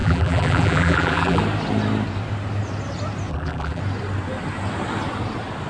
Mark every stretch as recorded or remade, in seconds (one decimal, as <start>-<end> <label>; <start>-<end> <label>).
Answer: 0.0-1.4 remade; 1.4-3.3 recorded; 3.3-3.8 remade; 3.8-5.7 recorded